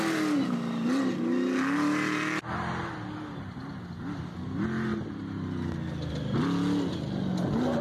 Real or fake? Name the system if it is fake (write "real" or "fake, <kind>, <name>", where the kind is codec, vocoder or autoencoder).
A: real